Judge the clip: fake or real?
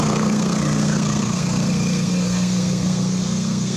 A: fake